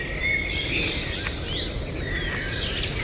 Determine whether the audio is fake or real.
real